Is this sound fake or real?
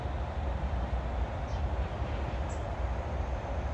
real